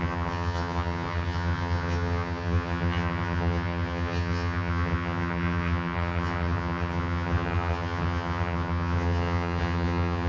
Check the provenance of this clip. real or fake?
fake